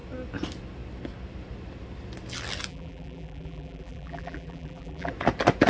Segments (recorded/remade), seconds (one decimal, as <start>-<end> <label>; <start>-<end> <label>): 0.0-2.7 recorded; 2.7-5.1 remade; 5.1-5.7 recorded